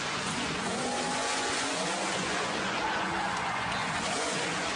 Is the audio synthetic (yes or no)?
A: yes